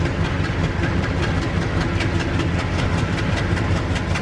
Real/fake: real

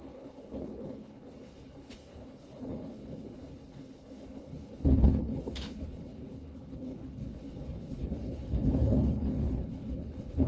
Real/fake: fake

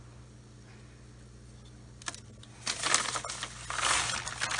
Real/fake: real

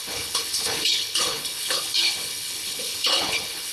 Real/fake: fake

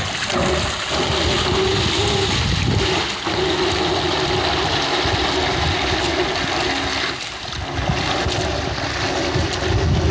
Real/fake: real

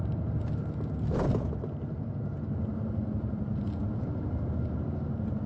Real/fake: real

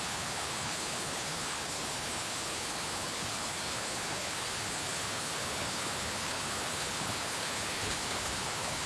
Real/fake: fake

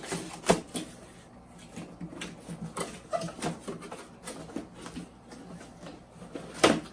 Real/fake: real